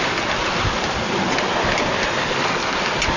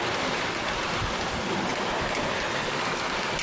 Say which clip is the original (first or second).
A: second